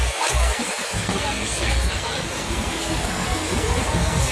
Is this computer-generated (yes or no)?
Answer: yes